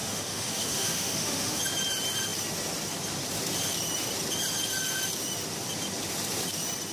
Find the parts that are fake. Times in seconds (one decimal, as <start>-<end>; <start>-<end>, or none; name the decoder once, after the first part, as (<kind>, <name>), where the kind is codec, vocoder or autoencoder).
0.0-1.6 (autoencoder, DAC-VAE)